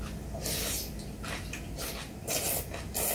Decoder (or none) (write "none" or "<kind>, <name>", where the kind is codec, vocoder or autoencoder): none